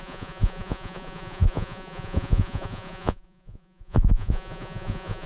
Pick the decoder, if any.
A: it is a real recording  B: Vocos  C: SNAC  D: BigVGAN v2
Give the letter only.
B